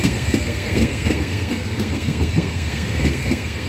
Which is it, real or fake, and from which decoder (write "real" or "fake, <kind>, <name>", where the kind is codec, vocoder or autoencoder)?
fake, codec, SNAC